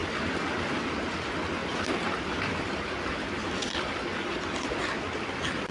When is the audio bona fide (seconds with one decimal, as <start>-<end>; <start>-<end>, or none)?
0.9-1.6; 4.9-5.7